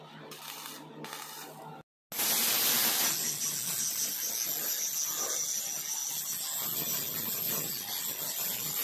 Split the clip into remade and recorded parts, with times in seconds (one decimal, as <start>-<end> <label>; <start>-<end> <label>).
0.0-8.8 recorded

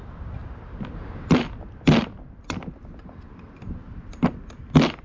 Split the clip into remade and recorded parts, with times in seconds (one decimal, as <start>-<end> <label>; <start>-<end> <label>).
0.0-0.4 recorded; 0.4-1.0 remade; 1.0-5.0 recorded